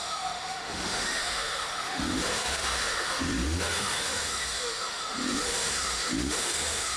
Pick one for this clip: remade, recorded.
remade